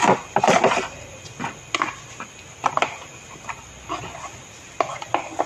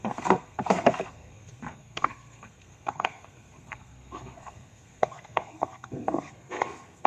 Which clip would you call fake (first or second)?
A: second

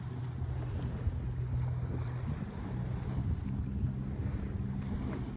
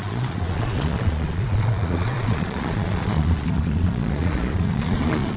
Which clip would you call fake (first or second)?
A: second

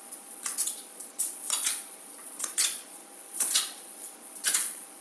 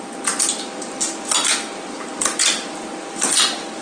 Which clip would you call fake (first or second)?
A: first